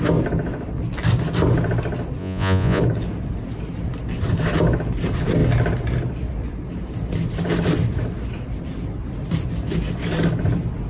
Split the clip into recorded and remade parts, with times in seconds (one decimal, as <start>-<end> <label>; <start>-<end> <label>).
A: 0.0-2.2 recorded; 2.2-2.8 remade; 2.8-10.9 recorded